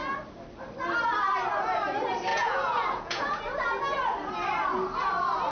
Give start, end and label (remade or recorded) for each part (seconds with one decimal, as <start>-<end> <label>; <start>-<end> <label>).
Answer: 0.0-2.3 recorded; 2.3-3.4 remade; 3.4-5.5 recorded